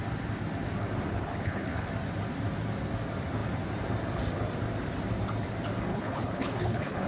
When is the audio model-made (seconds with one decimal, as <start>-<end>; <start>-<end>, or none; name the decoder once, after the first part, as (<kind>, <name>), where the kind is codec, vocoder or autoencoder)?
1.1-1.9 (codec, HILCodec); 5.9-7.1